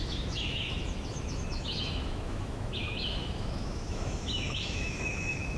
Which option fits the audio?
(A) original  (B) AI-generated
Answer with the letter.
B